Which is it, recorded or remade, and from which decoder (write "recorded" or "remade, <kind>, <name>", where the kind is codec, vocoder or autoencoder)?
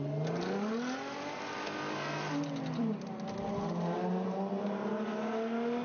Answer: recorded